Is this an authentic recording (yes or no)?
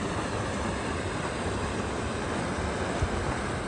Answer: yes